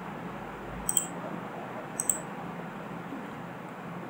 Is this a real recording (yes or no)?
yes